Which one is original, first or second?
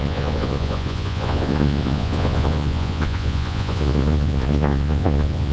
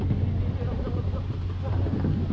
second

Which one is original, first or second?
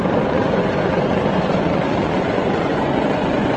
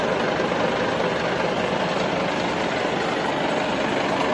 second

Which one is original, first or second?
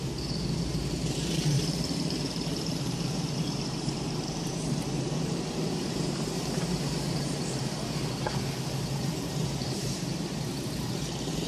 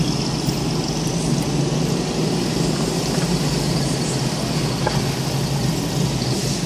second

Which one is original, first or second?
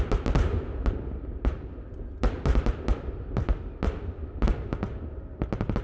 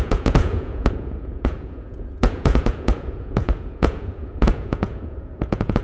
first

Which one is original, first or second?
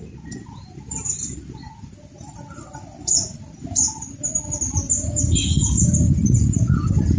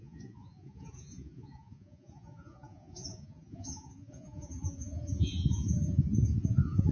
first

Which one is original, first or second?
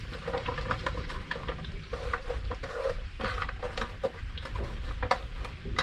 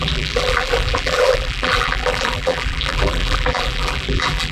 first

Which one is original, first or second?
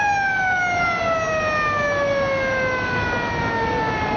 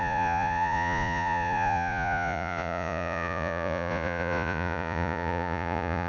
first